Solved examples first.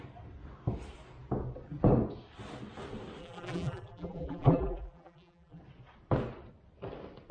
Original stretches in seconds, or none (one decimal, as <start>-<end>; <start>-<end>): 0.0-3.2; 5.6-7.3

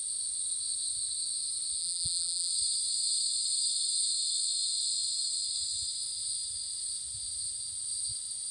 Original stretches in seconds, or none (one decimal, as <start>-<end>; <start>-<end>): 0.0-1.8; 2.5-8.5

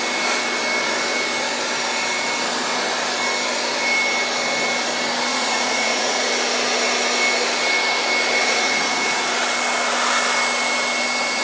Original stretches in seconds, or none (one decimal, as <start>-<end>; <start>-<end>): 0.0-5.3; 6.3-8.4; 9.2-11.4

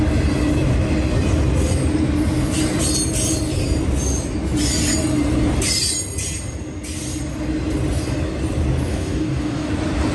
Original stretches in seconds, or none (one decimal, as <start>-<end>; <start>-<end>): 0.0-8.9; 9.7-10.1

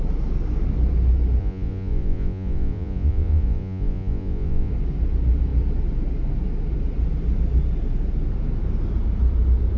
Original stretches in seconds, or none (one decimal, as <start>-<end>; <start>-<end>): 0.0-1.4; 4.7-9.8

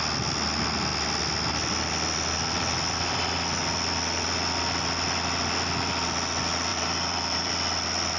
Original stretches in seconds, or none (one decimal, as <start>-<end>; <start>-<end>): 0.0-6.7; 7.5-8.2

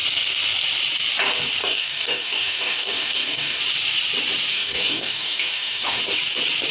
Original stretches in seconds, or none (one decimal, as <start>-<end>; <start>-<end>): 0.0-1.6; 3.6-4.5; 6.0-6.7